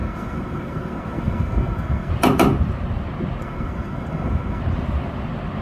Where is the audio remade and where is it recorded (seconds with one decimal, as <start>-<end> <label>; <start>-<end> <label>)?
0.0-2.1 remade; 2.1-3.4 recorded; 3.4-4.6 remade; 4.6-5.6 recorded